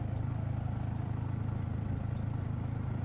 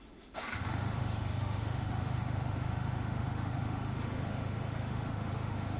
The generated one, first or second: second